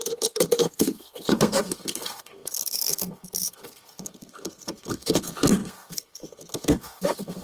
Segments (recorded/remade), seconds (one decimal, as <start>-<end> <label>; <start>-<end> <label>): 0.0-7.4 remade